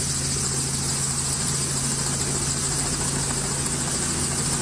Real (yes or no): yes